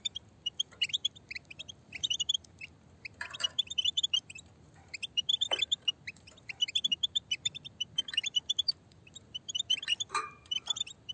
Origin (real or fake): real